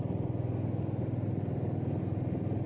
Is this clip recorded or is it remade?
recorded